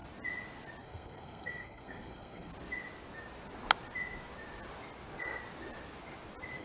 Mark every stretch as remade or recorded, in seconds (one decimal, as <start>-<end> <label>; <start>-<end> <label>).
0.0-0.8 recorded; 0.8-2.5 remade; 2.5-6.6 recorded